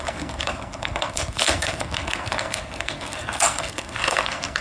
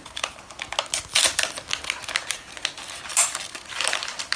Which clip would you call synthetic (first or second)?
first